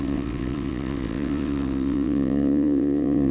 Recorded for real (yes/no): no